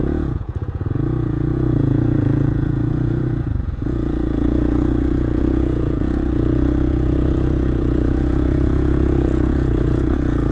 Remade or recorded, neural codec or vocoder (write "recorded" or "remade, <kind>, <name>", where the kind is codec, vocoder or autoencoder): remade, vocoder, Vocos